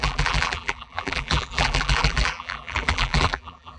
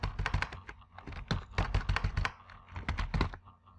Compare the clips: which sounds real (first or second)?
second